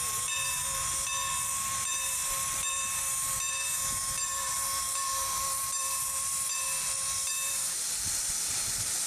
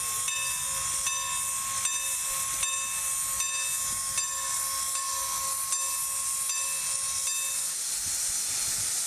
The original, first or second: second